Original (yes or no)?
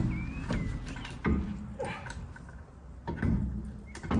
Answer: yes